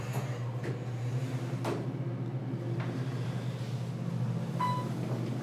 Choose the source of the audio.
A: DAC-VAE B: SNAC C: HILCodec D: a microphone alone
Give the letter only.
D